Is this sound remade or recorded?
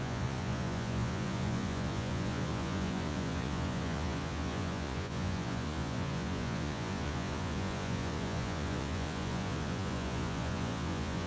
remade